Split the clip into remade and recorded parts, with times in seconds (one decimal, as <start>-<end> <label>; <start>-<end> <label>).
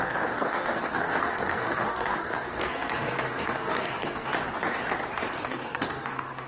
0.0-4.3 remade; 4.3-5.4 recorded; 5.4-6.5 remade